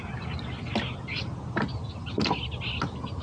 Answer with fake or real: real